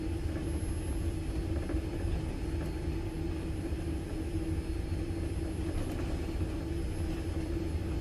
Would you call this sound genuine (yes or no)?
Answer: yes